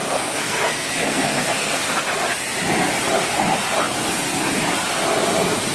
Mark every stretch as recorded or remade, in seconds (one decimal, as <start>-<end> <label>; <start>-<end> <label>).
0.0-1.8 remade; 1.8-5.7 recorded

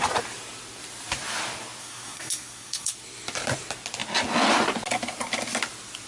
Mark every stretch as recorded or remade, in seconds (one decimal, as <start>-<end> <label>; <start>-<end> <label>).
0.0-1.8 recorded; 1.8-2.9 remade; 2.9-6.1 recorded

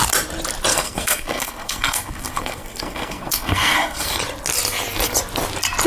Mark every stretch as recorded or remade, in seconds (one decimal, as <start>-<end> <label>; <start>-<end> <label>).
0.0-0.7 recorded; 0.7-4.2 remade; 4.2-5.9 recorded

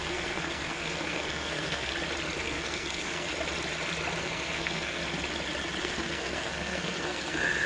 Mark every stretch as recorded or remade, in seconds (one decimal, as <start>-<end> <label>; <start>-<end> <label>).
0.0-1.9 remade; 1.9-2.4 recorded; 2.4-3.3 remade; 3.3-4.2 recorded; 4.2-5.0 remade; 5.0-5.8 recorded; 5.8-7.7 remade